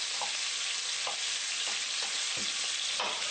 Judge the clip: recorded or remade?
recorded